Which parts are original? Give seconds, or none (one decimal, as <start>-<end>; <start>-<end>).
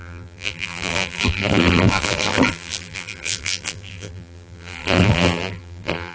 none